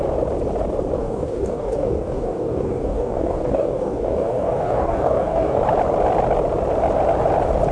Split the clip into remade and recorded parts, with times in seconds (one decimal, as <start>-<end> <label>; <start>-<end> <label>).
0.0-1.0 recorded; 1.0-5.6 remade; 5.6-7.7 recorded